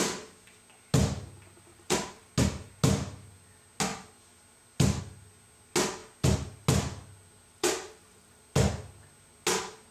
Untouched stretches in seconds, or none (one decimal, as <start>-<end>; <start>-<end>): 0.0-1.7; 2.3-7.5; 8.4-9.9